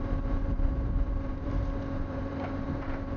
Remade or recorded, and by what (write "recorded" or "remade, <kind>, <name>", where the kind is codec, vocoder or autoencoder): remade, vocoder, BigVGAN v2